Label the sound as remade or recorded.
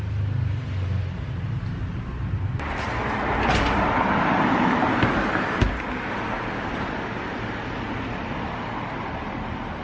recorded